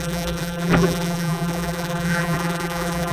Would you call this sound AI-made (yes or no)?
yes